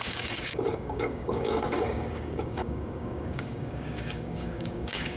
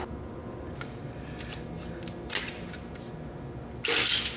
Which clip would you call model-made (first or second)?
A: first